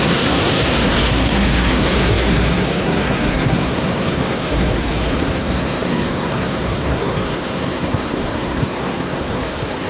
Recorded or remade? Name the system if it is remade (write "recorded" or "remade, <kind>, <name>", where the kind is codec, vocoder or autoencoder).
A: remade, codec, SNAC